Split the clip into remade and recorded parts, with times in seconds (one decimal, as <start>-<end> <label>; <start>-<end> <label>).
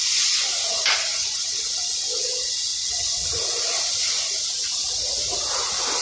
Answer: 0.0-1.2 recorded; 1.2-2.3 remade; 2.3-2.7 recorded; 2.7-3.3 remade; 3.3-6.0 recorded